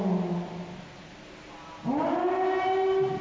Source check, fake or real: real